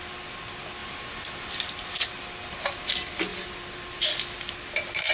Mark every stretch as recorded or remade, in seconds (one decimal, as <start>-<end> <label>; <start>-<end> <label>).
0.0-5.1 recorded